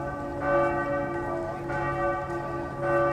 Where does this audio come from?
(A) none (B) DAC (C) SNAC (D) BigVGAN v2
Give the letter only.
A